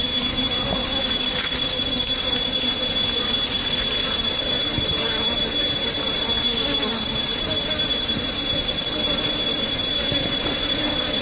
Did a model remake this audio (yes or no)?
no